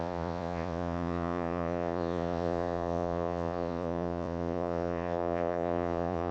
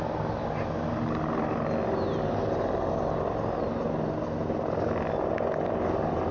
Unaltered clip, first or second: second